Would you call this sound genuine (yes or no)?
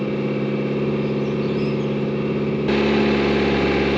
yes